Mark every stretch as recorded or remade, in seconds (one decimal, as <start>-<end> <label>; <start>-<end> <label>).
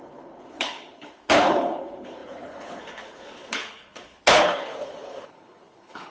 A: 0.0-6.1 remade